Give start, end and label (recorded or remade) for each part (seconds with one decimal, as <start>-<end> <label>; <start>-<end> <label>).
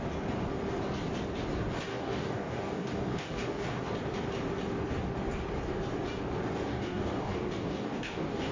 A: 0.0-1.9 recorded; 1.9-3.8 remade; 3.8-6.7 recorded; 6.7-8.5 remade